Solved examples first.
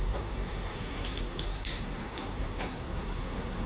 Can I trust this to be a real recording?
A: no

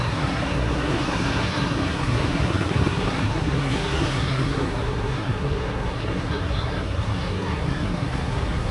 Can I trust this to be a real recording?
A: no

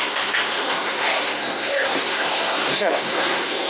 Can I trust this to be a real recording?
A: no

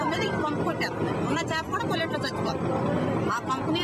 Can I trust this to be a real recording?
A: yes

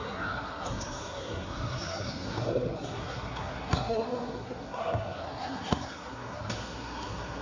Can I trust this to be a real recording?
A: no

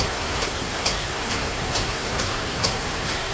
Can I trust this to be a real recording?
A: no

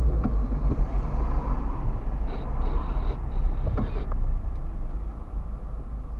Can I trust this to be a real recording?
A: yes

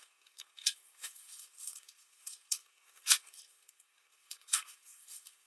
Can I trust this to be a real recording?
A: no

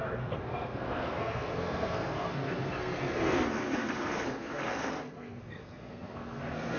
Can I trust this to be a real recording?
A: no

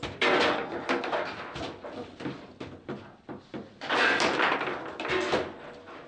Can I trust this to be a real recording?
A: yes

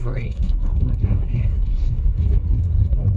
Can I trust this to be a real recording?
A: no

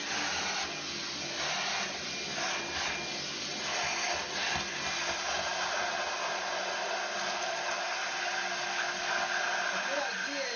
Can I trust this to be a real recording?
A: yes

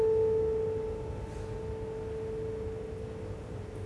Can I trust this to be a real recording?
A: yes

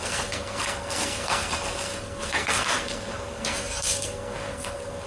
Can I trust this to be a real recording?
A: no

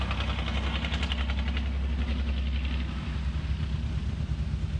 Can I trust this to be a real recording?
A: yes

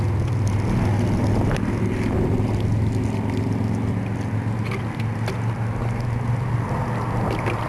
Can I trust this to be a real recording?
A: yes